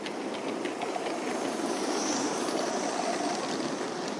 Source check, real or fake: real